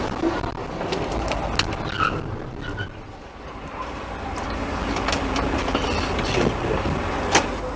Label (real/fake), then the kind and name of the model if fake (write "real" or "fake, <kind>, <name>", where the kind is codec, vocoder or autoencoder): real